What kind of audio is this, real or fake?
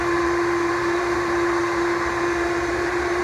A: fake